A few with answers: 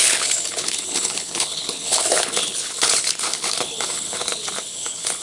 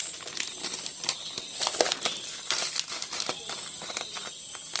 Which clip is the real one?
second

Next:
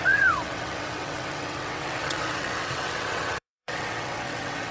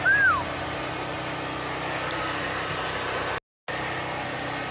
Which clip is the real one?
second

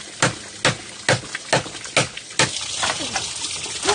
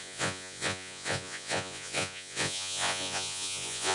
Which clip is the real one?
first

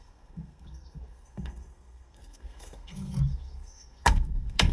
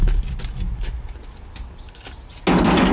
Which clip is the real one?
second